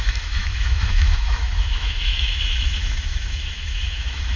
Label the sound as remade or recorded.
remade